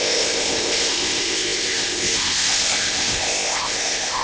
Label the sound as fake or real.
fake